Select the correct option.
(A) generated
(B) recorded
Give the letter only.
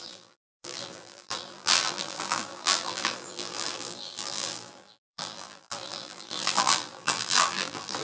A